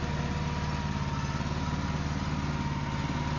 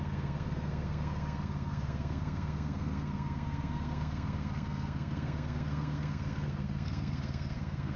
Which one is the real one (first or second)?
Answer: first